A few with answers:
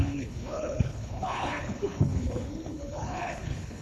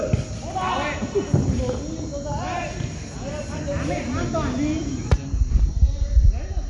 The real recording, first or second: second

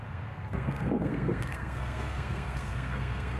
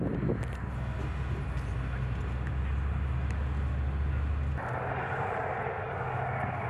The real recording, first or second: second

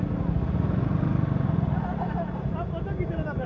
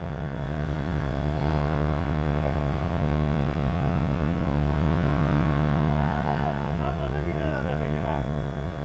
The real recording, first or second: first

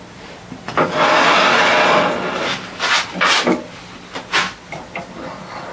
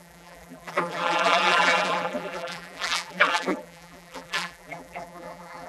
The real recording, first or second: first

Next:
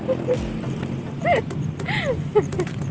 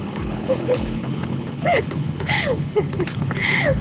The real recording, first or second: first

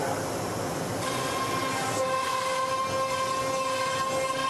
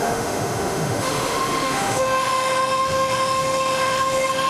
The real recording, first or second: first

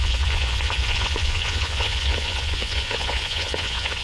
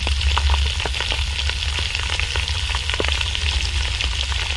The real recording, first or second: second